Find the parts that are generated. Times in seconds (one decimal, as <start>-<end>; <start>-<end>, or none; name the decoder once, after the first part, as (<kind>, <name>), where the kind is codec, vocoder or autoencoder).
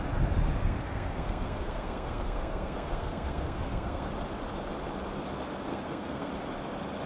0.6-4.1 (codec, SNAC); 5.7-6.3